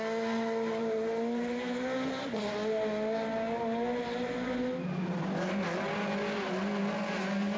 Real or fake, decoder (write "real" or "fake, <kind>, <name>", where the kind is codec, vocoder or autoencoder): real